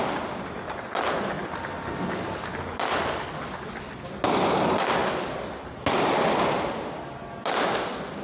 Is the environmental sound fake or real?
real